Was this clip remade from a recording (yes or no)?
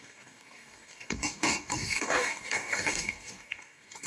yes